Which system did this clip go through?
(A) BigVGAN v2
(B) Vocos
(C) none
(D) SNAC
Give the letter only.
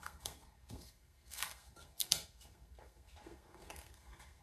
D